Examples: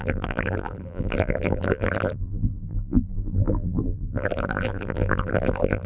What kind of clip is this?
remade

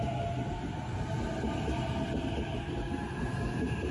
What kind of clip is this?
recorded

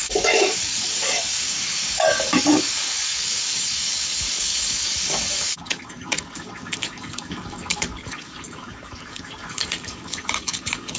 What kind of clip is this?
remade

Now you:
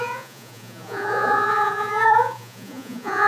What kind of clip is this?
remade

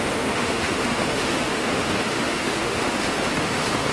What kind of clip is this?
remade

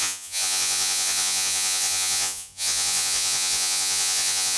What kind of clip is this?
remade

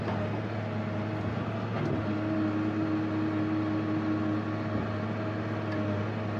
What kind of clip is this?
recorded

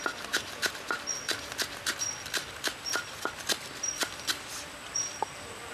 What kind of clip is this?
recorded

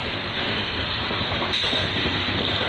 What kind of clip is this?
remade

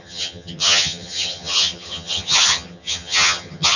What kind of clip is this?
remade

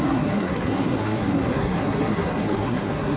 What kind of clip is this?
remade